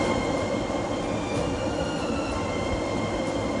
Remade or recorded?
recorded